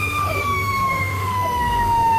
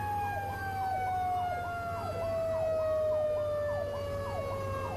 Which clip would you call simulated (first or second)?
first